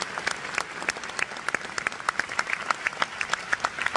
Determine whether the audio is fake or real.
real